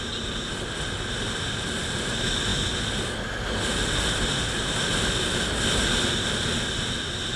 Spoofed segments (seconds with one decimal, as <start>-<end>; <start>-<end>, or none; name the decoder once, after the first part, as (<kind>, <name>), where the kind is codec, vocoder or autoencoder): none